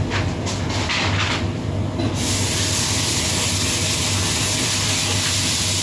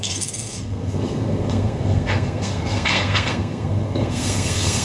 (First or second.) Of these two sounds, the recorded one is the first